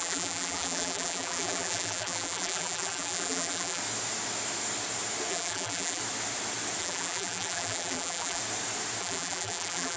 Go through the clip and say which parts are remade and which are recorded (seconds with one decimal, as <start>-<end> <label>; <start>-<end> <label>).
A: 0.0-3.8 remade; 3.8-5.3 recorded; 5.3-6.0 remade; 6.0-6.8 recorded; 6.8-8.4 remade; 8.4-9.0 recorded; 9.0-10.0 remade